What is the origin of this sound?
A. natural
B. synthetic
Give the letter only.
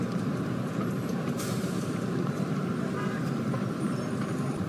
B